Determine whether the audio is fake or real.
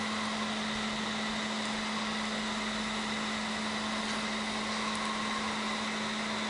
real